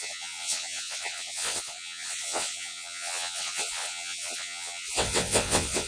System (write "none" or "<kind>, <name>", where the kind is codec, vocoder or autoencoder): vocoder, WaveNeXt